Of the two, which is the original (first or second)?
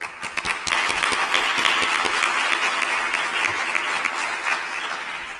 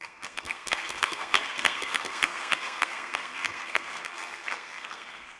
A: first